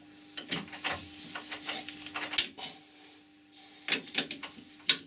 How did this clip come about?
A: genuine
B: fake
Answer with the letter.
A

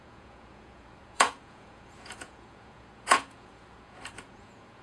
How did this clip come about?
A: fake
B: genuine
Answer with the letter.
A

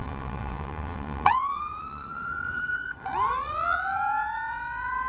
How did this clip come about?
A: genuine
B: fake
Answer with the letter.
B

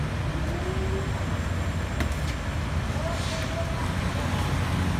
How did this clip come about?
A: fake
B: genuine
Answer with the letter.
B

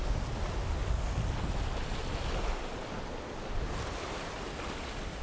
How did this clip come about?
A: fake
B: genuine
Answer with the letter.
B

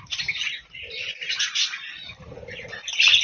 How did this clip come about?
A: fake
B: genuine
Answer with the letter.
B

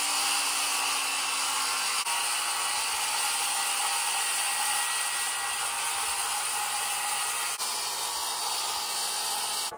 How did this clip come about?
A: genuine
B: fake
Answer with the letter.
A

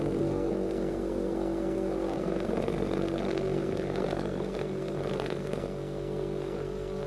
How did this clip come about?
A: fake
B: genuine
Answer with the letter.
A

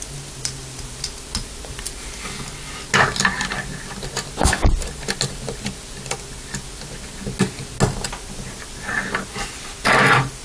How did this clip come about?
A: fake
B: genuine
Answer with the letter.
B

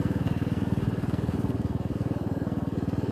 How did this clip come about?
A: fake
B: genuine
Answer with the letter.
A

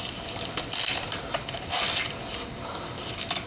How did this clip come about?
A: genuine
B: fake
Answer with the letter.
A